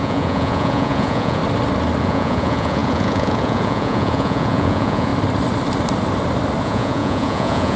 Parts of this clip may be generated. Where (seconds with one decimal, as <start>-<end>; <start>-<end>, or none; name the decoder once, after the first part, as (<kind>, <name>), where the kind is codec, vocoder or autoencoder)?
0.0-1.4 (vocoder, Vocos); 2.0-5.1; 6.6-7.8